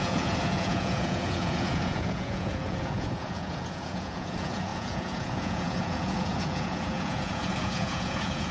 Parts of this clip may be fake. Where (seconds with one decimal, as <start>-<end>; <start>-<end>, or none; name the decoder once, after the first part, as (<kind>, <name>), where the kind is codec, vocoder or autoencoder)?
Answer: 0.0-8.5 (vocoder, Vocos)